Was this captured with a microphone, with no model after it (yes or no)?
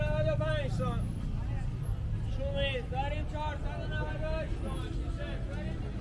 yes